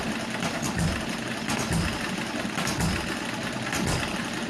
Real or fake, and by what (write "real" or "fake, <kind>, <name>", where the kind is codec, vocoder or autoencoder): real